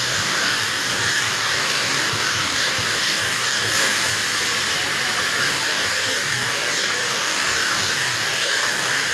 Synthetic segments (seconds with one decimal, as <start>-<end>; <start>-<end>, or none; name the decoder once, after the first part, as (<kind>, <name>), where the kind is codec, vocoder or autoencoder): 0.0-4.1 (codec, DAC); 5.4-9.1